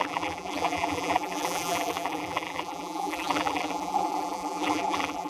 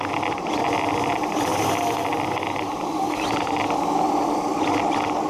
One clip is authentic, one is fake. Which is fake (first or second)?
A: first